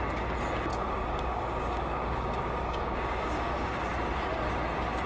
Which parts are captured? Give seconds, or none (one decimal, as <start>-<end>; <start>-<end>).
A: 0.0-0.7; 3.8-5.1